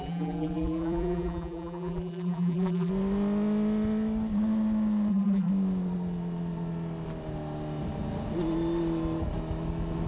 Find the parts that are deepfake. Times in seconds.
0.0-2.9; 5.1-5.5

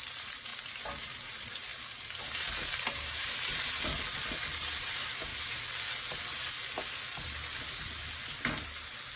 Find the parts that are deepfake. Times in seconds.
0.0-3.9; 4.8-5.3

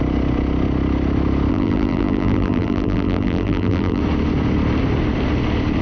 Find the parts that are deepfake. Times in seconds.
1.5-4.0

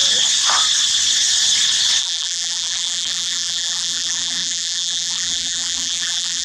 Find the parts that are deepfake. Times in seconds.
2.0-6.4